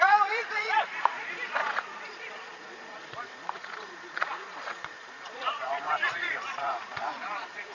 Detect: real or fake fake